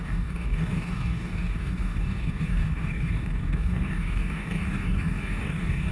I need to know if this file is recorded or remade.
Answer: remade